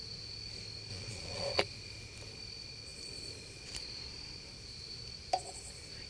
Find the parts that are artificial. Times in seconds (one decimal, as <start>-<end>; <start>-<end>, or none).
0.9-1.6